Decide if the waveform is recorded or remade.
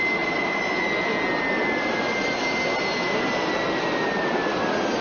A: recorded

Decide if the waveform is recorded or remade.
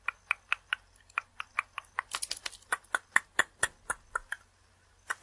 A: recorded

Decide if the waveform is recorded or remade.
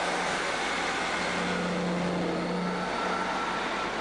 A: recorded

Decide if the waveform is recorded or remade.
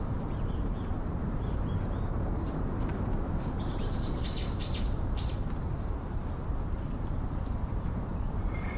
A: remade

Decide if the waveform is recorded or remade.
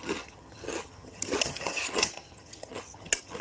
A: remade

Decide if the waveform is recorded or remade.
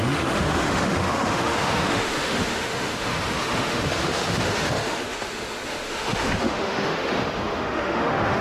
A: remade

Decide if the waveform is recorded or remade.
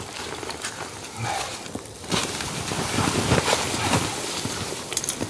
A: recorded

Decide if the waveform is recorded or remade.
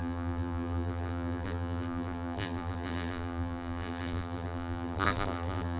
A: remade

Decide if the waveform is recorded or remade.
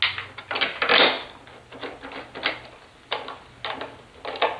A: recorded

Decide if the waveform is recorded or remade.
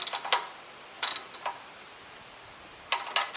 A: recorded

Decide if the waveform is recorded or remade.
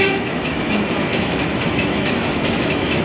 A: remade